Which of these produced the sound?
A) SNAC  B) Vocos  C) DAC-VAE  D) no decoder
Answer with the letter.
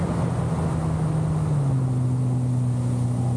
D